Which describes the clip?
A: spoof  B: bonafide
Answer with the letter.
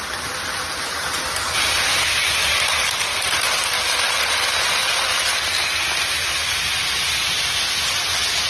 B